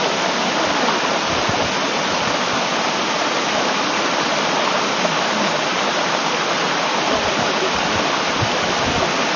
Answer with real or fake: real